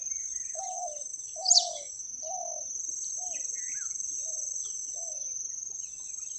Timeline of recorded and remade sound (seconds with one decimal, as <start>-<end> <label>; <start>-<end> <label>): 0.0-6.4 recorded